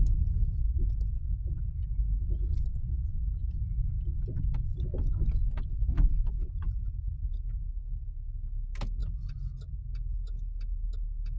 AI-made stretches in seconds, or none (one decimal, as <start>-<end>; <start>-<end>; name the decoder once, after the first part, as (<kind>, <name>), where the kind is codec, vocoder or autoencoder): 6.4-7.3 (vocoder, BigVGAN v2)